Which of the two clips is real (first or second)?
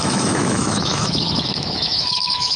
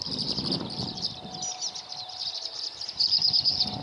second